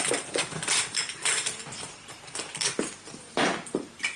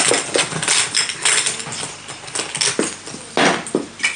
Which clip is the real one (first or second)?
second